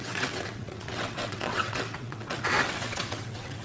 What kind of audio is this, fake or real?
fake